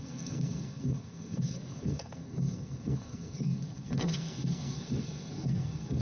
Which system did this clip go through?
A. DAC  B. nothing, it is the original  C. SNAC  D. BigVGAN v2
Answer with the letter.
C